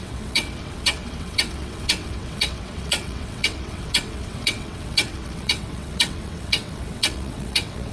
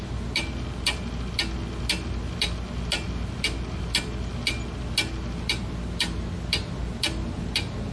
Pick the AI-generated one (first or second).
first